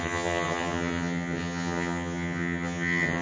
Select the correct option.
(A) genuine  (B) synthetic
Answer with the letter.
B